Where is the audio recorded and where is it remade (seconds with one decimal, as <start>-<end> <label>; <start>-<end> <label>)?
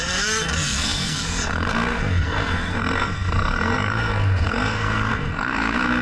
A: 0.0-6.0 remade